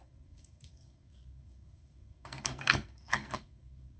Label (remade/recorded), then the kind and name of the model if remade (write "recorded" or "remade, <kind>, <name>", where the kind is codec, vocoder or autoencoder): remade, codec, SNAC